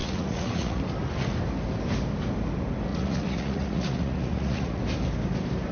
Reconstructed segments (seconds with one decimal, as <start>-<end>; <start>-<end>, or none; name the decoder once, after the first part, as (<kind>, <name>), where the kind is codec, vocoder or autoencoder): 0.0-0.8 (vocoder, Vocos); 2.9-4.8

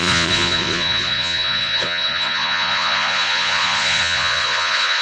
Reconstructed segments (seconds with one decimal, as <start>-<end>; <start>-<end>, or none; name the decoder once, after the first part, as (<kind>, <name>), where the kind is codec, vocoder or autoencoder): 0.0-5.0 (vocoder, Vocos)

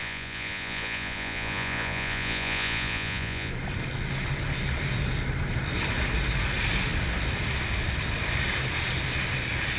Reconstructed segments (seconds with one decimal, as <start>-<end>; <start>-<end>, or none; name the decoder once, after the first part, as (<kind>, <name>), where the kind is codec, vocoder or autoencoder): 0.0-3.5 (vocoder, Vocos)

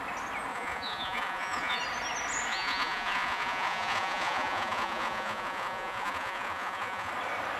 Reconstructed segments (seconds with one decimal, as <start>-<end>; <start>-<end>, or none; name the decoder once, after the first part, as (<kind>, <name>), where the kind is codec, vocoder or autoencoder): 0.5-1.8 (vocoder, Vocos); 2.5-7.1